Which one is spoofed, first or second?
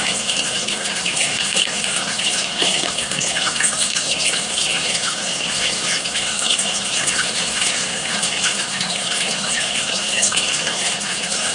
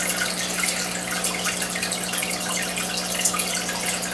first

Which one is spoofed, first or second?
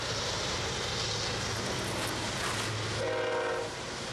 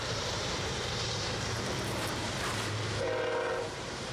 second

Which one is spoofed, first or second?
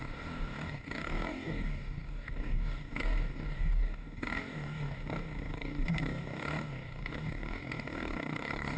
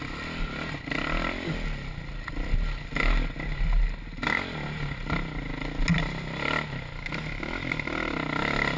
first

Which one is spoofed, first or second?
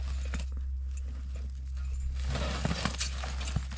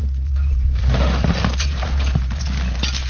second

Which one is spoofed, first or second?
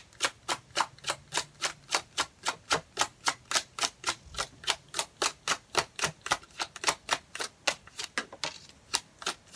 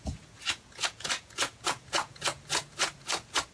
second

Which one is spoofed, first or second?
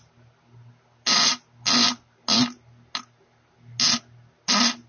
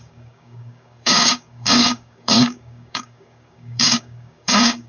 second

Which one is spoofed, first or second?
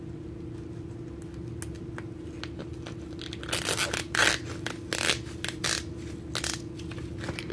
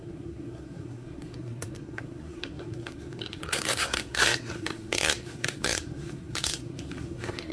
second